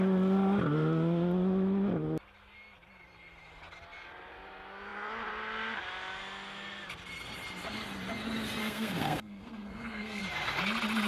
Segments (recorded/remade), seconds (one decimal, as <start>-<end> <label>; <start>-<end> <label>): 0.0-8.6 recorded; 8.6-10.2 remade; 10.2-11.1 recorded